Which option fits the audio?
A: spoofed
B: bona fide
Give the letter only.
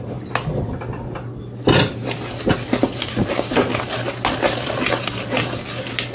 B